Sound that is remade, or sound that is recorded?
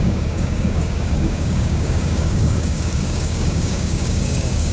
remade